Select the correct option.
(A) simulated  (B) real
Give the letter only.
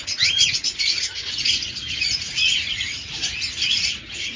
A